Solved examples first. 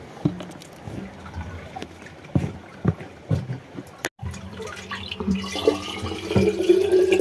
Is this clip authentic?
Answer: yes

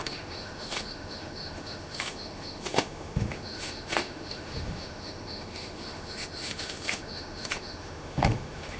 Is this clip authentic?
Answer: no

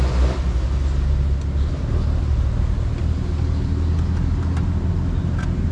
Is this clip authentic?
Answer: yes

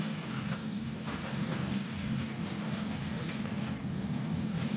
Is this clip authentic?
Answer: no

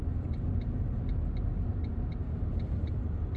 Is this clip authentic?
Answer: yes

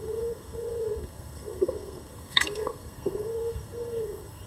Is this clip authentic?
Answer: no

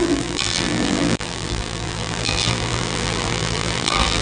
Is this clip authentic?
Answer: no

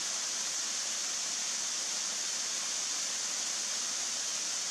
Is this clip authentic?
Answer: yes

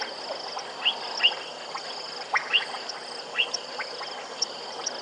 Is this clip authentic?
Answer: yes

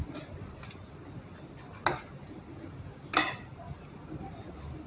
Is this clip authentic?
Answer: yes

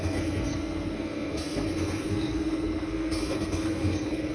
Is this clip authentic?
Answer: no